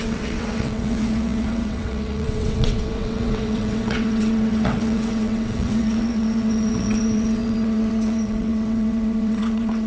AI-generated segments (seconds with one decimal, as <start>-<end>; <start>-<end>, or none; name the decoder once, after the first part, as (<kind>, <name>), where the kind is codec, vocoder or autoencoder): 0.0-9.9 (vocoder, WaveNeXt)

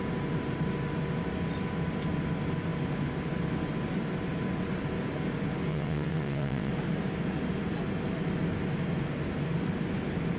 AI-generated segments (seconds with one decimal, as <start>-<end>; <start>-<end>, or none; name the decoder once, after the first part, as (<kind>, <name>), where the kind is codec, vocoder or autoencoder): 5.7-6.7 (vocoder, WaveNeXt)

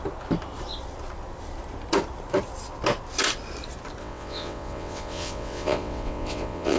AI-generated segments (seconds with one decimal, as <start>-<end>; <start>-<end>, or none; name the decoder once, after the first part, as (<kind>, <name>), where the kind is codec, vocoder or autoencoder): 4.0-6.8 (vocoder, WaveNeXt)

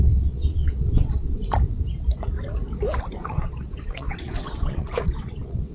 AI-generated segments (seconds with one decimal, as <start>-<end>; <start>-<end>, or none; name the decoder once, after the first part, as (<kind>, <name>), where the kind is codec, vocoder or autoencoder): 0.0-1.4 (vocoder, WaveNeXt); 3.2-5.7